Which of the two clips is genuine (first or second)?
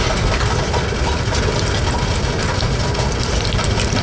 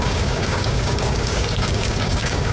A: first